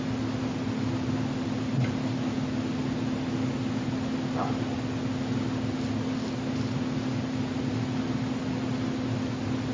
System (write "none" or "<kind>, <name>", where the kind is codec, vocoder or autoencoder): none